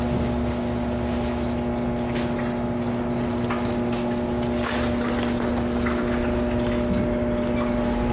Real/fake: real